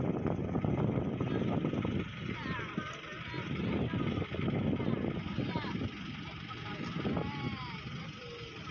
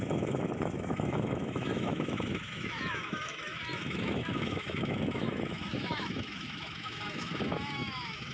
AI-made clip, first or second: second